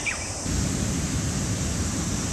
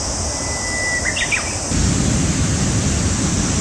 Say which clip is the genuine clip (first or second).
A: second